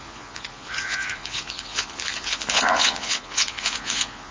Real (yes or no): no